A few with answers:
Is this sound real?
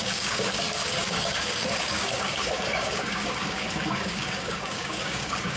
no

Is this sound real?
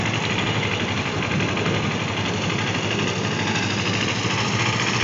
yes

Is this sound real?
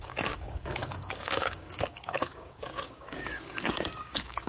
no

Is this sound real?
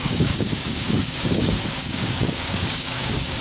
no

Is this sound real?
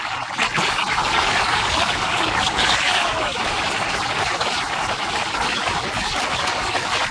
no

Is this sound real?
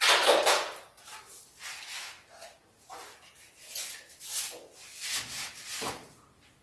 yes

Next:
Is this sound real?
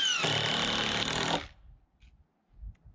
yes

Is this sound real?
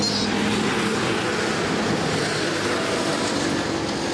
yes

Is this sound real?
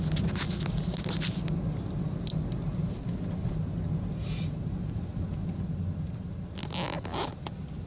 yes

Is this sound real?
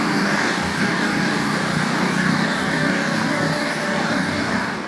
no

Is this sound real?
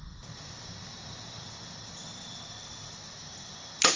yes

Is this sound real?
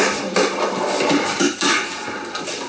yes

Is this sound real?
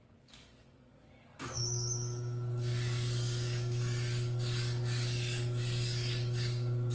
no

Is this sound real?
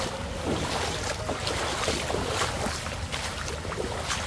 yes